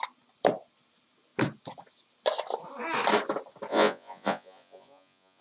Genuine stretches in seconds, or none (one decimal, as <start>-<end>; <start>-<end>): 0.0-3.7